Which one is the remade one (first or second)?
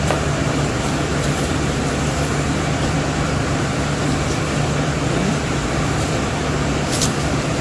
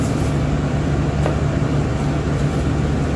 first